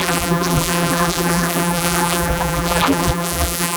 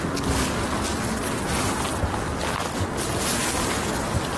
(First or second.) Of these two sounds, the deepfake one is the first